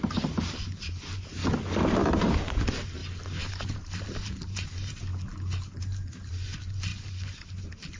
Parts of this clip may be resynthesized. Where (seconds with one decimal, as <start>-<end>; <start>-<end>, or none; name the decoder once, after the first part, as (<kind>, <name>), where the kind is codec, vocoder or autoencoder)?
0.0-1.4 (vocoder, BigVGAN v2); 2.0-3.0; 3.5-5.1; 5.8-8.0